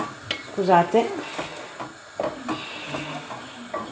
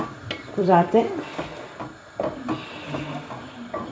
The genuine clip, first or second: first